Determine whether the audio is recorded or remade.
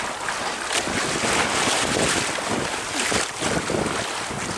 recorded